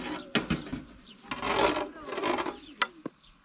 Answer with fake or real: real